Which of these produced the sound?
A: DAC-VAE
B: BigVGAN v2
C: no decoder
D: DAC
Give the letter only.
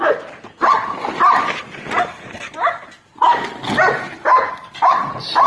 C